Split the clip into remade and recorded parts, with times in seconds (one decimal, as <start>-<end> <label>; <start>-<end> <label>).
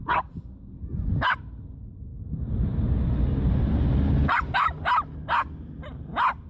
0.0-6.5 recorded